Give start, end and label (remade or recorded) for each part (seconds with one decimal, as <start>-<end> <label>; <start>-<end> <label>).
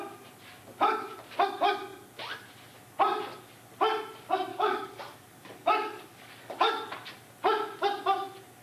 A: 0.0-4.5 recorded; 4.5-7.1 remade; 7.1-8.6 recorded